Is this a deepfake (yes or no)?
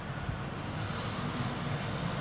no